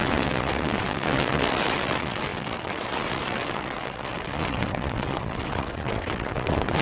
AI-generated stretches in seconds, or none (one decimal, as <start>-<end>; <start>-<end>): 0.0-6.8